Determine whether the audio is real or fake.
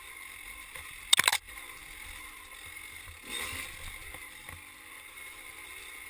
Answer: real